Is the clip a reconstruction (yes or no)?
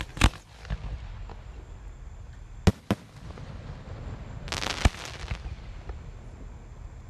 no